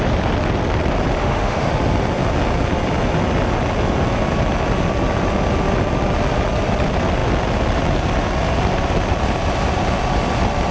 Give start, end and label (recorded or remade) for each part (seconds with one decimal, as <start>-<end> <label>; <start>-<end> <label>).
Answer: 0.0-1.2 recorded; 1.2-1.7 remade; 1.7-10.7 recorded